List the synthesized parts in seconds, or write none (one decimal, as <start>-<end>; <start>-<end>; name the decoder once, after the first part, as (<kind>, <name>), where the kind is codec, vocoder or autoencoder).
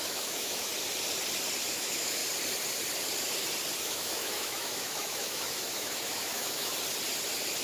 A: 0.0-0.7 (autoencoder, DAC-VAE); 1.7-2.2; 3.8-6.7